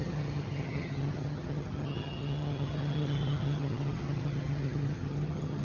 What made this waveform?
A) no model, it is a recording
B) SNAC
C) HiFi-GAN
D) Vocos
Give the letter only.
C